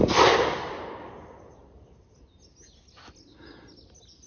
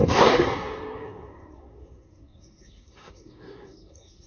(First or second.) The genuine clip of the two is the first